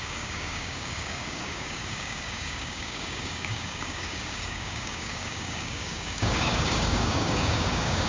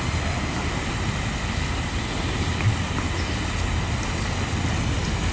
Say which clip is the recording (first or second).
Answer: second